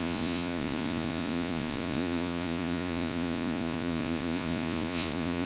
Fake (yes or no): yes